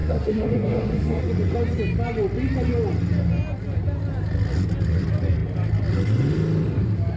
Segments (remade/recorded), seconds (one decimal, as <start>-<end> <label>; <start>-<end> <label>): 0.0-1.2 remade; 1.2-7.2 recorded